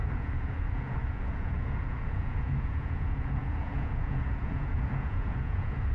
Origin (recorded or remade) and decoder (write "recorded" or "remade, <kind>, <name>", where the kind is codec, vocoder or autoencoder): remade, vocoder, Vocos